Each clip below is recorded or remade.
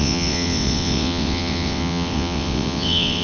remade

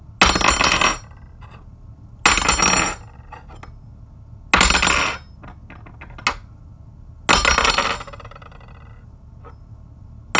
recorded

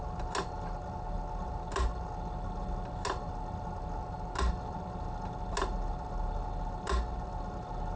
recorded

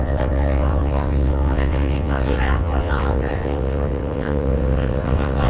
remade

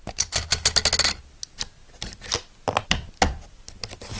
recorded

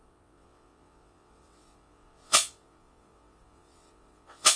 remade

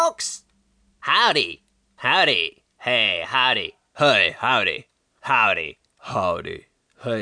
recorded